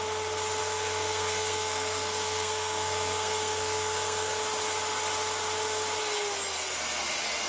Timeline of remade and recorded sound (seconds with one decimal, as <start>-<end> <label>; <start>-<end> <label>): 0.0-0.6 recorded; 0.6-4.4 remade; 4.4-7.5 recorded